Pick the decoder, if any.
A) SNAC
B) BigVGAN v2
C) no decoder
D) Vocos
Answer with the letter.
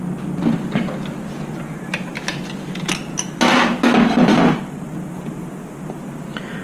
C